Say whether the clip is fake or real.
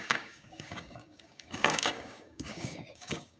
fake